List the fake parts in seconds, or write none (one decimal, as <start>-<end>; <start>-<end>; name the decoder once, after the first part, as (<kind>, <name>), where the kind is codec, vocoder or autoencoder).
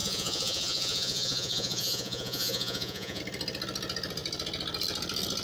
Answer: 0.0-3.2 (vocoder, Vocos)